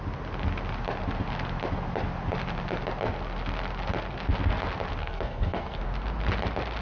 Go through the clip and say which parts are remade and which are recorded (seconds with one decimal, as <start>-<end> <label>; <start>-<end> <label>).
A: 0.0-5.0 recorded; 5.0-5.8 remade; 5.8-6.8 recorded